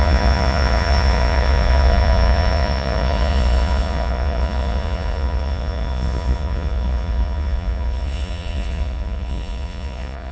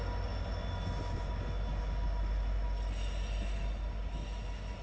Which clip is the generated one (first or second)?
first